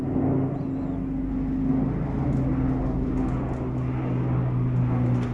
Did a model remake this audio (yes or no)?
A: no